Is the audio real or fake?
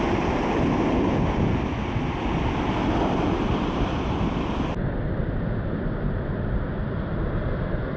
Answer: real